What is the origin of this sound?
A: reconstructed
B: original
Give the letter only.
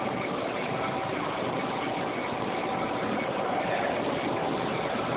B